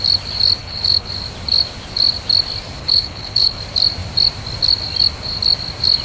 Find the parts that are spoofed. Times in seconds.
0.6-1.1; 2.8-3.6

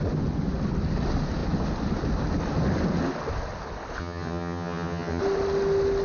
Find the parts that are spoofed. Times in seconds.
4.0-5.2